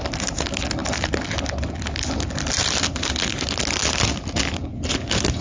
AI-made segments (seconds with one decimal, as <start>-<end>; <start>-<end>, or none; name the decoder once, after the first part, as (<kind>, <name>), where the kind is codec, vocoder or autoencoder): none